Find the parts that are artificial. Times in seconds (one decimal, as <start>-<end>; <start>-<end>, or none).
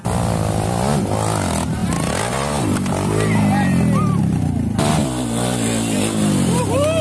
none